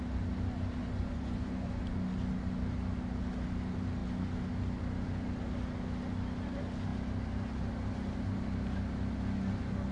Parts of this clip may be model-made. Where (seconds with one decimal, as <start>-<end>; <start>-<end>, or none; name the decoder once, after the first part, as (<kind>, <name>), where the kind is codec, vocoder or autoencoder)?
0.8-1.8 (vocoder, Vocos)